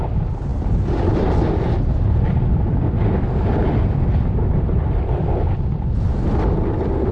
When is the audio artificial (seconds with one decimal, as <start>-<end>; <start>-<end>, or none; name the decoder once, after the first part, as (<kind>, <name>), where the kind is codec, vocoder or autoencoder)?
none